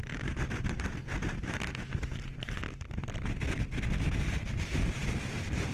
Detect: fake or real real